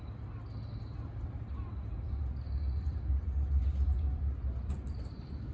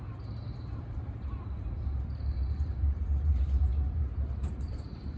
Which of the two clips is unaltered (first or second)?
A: first